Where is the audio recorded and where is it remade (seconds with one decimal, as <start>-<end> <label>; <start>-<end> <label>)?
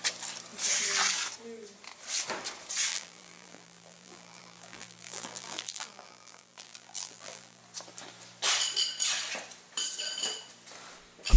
0.0-2.9 recorded; 2.9-7.6 remade; 7.6-11.4 recorded